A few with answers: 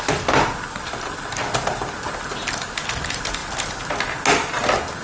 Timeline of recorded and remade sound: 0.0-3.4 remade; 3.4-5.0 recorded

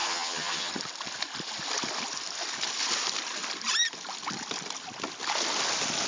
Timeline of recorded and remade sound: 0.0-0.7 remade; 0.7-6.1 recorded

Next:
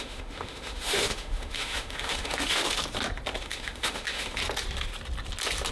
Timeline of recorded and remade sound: 0.0-2.8 remade; 2.8-3.4 recorded; 3.4-4.4 remade; 4.4-5.7 recorded

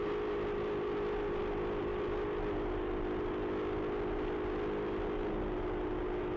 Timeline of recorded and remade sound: 0.0-6.4 recorded